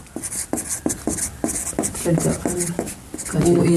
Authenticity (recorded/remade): recorded